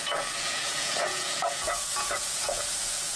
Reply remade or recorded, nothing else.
remade